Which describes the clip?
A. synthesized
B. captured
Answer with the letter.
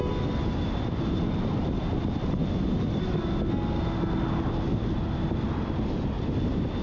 B